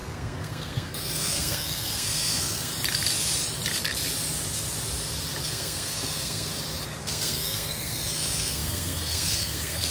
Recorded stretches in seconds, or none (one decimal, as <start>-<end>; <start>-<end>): 2.7-5.4; 6.5-7.0